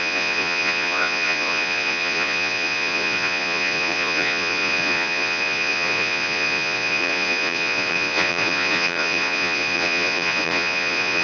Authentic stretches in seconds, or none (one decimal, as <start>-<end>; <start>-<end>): none